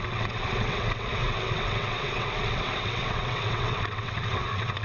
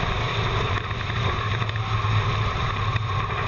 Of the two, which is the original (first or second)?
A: second